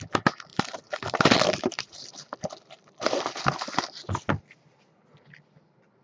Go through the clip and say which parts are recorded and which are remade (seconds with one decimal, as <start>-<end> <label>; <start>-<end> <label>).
0.0-0.5 recorded; 0.5-4.1 remade; 4.1-6.0 recorded